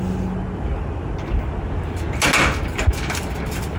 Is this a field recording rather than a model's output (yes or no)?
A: yes